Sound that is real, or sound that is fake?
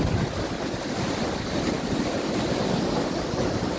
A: real